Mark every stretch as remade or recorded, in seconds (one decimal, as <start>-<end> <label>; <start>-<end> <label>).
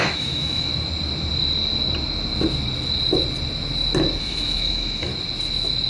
0.0-0.7 remade; 0.7-4.2 recorded; 4.2-5.1 remade; 5.1-5.9 recorded